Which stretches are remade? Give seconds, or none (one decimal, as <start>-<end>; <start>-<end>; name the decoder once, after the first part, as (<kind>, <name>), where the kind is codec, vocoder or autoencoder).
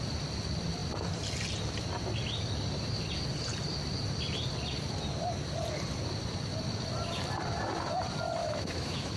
8.4-9.2 (autoencoder, DAC-VAE)